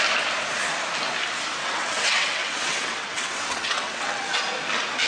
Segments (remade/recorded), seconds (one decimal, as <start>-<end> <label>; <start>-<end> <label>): 0.0-1.6 recorded; 1.6-4.4 remade; 4.4-5.1 recorded